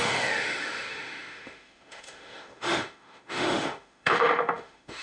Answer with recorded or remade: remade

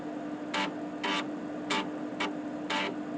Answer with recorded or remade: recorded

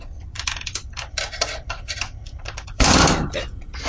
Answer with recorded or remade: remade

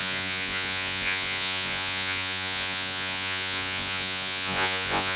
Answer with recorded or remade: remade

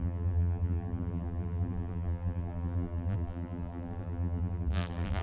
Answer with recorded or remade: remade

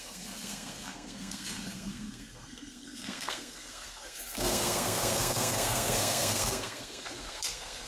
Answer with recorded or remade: remade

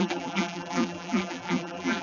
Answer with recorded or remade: remade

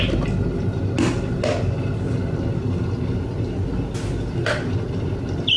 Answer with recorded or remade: recorded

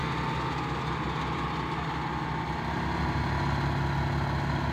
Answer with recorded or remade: recorded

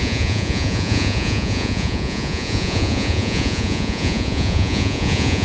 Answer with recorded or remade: remade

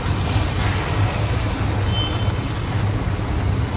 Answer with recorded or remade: recorded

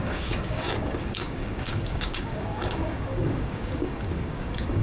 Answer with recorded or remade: remade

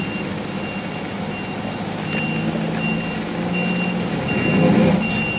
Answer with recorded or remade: recorded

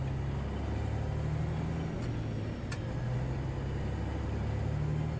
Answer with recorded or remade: recorded